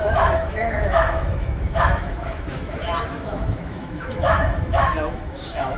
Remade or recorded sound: remade